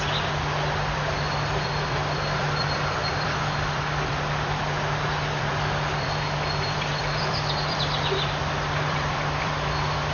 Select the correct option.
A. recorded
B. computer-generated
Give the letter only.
B